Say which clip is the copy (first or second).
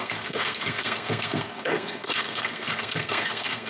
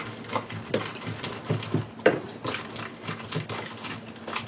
first